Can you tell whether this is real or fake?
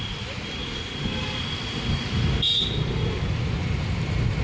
real